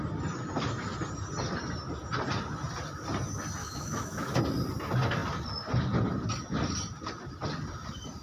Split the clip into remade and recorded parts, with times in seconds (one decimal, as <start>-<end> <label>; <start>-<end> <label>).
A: 0.0-3.6 recorded; 3.6-4.4 remade; 4.4-8.2 recorded

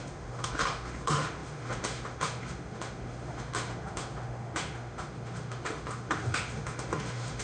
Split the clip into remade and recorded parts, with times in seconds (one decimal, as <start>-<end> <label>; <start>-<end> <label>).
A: 0.0-7.4 remade

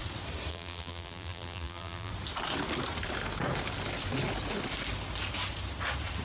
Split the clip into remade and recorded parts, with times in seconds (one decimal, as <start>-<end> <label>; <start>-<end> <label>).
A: 0.0-0.5 recorded; 0.5-2.1 remade; 2.1-6.2 recorded